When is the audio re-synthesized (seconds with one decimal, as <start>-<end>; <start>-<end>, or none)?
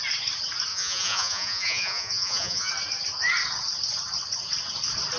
0.7-2.7